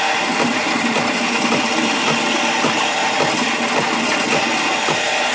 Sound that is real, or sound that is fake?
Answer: real